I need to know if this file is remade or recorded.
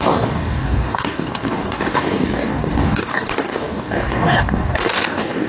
remade